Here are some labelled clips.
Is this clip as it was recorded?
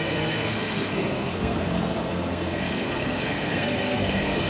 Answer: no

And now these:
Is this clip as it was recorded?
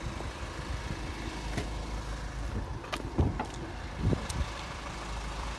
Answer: no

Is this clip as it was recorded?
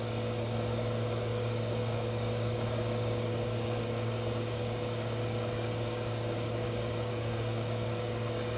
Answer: no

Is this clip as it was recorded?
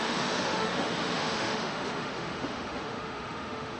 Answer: no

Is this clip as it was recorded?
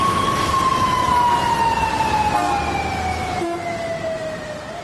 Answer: yes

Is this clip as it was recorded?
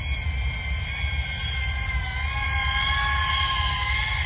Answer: yes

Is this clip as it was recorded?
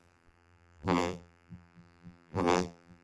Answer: no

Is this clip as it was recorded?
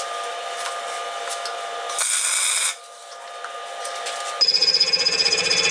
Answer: yes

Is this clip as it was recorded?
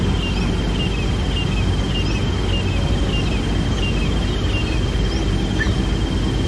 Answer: yes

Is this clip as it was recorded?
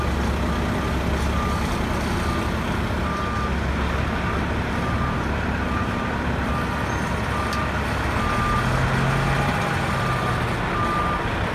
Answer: yes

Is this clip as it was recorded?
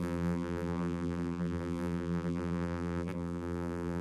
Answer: no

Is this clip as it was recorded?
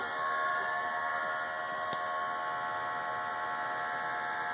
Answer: yes